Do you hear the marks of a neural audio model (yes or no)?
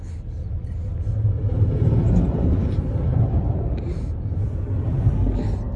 no